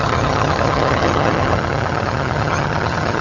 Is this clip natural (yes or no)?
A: no